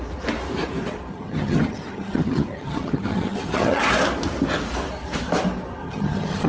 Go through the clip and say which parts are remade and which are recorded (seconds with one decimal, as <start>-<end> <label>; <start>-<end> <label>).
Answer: 0.0-1.1 recorded; 1.1-3.8 remade; 3.8-5.8 recorded; 5.8-6.5 remade